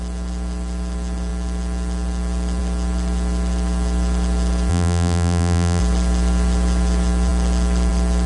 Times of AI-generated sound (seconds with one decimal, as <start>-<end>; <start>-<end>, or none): 4.7-5.8